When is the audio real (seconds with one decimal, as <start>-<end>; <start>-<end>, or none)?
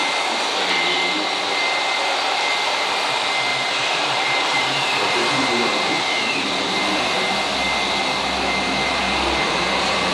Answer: 0.0-3.5; 5.9-10.1